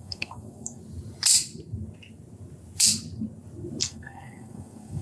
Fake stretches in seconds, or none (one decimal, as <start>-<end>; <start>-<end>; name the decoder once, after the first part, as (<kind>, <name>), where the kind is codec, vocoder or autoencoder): 0.0-0.8 (codec, SNAC); 3.8-5.0